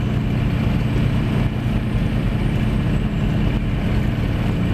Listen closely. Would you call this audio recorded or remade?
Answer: recorded